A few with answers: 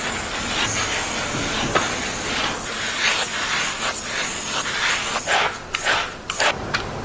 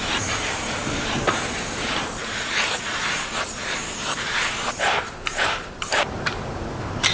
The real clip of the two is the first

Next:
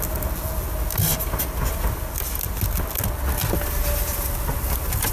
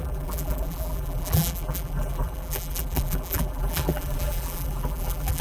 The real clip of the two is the first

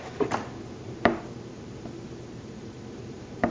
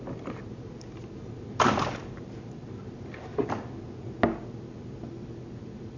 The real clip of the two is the second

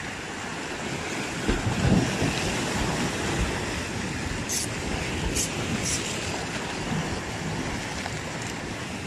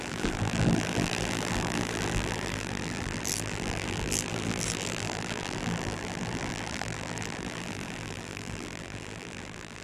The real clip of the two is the first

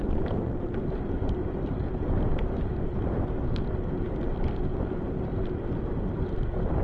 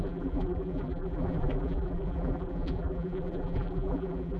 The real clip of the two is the first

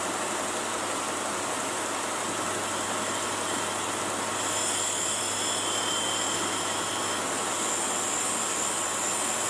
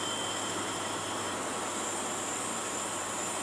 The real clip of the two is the first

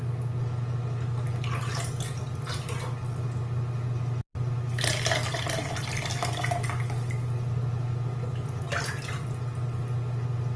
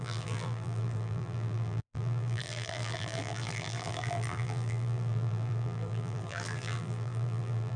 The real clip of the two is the first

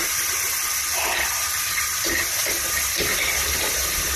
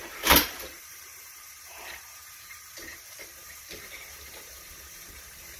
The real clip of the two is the first